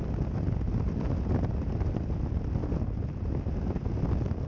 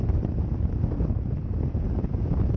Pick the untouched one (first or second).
first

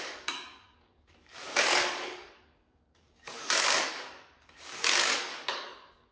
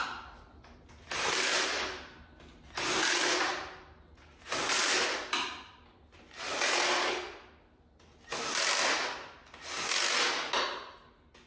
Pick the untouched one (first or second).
second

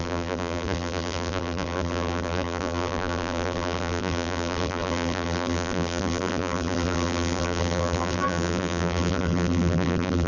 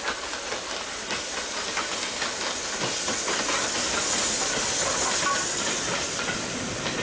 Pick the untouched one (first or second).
second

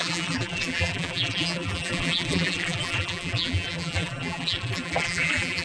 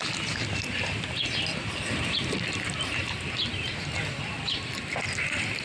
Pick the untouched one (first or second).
second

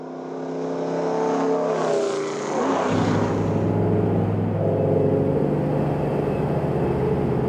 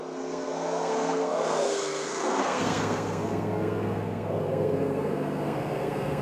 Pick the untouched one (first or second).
first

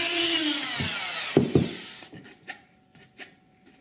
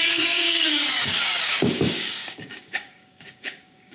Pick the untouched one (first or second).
first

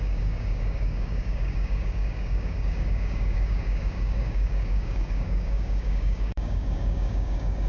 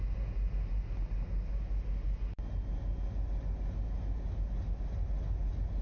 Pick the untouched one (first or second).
second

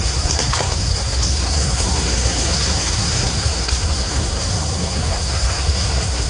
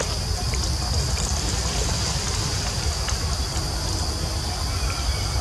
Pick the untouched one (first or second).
second